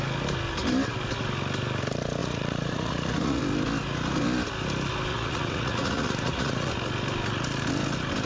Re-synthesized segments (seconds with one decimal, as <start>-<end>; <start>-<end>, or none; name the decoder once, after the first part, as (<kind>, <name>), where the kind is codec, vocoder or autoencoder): 2.2-3.4 (vocoder, Vocos); 5.1-6.7

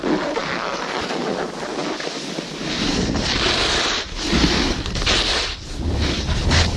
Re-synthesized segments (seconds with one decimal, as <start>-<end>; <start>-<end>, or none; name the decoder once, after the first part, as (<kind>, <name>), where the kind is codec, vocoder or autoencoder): none

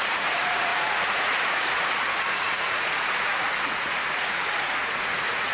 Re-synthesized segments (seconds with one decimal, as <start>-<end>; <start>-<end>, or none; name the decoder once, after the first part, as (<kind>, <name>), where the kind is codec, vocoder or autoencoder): 0.0-5.5 (vocoder, Vocos)

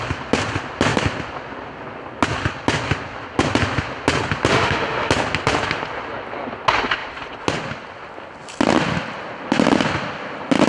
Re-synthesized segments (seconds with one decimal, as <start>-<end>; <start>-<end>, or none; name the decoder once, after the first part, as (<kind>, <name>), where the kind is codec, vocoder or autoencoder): 4.5-5.1 (autoencoder, DAC-VAE)